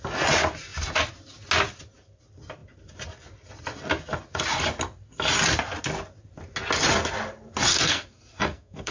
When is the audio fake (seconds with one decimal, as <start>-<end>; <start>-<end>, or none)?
7.7-8.9